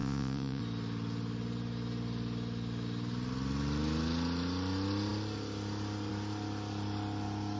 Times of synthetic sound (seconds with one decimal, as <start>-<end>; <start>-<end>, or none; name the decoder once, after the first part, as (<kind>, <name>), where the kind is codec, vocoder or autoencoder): 0.0-0.6 (vocoder, Vocos)